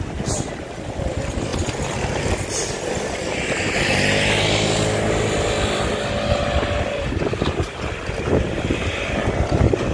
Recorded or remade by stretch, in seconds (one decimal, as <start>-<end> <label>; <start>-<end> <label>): 0.0-9.9 recorded